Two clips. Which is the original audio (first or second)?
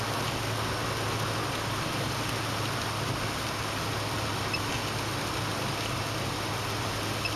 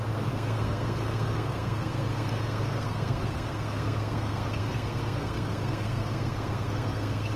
first